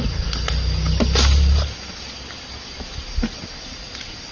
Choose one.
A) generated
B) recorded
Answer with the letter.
B